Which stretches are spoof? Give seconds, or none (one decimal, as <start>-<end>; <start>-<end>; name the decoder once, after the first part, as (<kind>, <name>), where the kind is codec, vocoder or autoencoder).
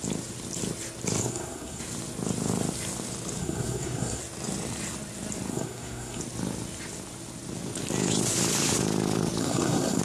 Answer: 1.2-1.8 (codec, SNAC); 3.4-4.2; 5.5-6.2; 9.4-10.0